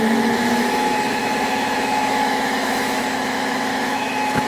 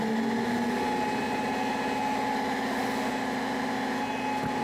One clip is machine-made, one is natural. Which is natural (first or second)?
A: second